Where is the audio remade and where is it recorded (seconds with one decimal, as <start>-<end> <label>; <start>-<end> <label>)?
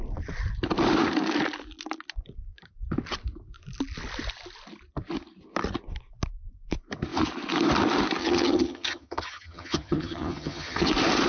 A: 0.0-8.2 recorded; 8.2-10.9 remade; 10.9-11.3 recorded